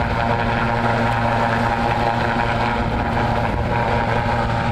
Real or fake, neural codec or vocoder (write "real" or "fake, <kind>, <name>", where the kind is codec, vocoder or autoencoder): real